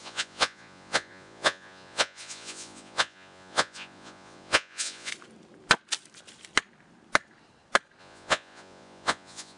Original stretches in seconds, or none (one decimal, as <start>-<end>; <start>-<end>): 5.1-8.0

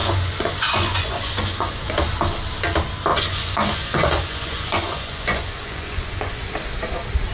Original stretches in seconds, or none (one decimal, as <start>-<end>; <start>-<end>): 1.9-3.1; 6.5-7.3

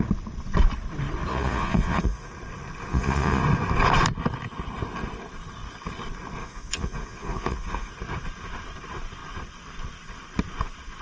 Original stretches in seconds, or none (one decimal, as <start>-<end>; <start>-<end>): 0.0-1.3; 2.3-2.9; 3.4-6.4; 7.9-11.0

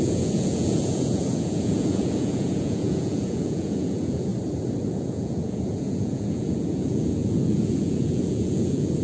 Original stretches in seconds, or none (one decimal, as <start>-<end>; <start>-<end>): 4.3-4.9